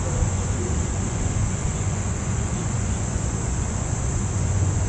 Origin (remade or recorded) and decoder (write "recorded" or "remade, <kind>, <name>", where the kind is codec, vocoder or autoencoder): remade, vocoder, Vocos